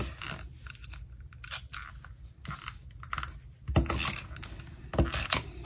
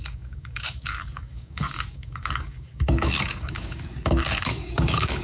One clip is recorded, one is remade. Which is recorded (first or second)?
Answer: first